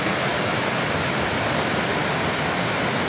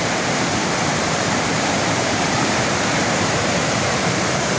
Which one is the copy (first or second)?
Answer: second